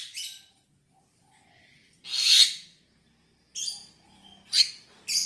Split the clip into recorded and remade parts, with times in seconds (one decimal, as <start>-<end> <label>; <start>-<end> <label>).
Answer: 0.0-5.3 recorded